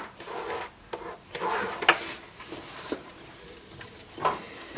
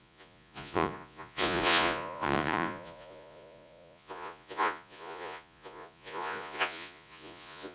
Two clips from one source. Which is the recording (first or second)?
first